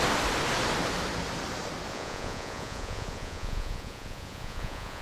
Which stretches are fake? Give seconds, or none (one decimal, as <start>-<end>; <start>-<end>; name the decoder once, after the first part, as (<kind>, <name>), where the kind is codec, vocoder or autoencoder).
1.9-5.0 (vocoder, Vocos)